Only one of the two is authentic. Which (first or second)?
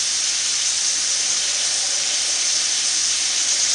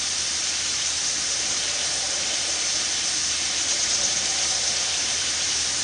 first